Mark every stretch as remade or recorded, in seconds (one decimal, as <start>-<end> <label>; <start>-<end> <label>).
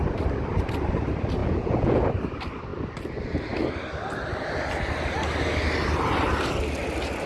0.0-1.4 recorded; 1.4-2.1 remade; 2.1-7.3 recorded